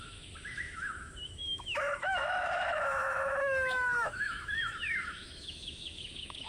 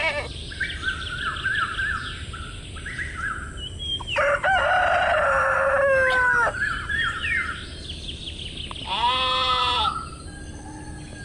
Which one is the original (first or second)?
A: second